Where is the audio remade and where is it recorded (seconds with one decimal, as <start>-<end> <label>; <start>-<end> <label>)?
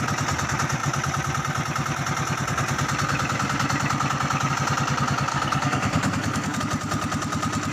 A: 0.0-5.3 recorded; 5.3-6.6 remade; 6.6-7.7 recorded